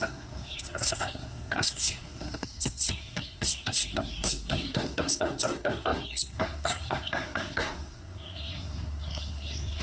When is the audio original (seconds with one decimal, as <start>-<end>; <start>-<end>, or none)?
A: none